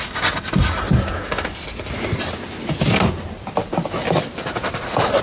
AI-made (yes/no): no